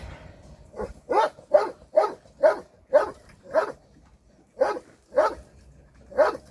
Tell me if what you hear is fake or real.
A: real